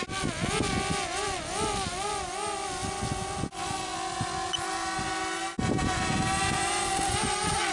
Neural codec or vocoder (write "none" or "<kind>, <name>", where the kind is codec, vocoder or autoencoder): none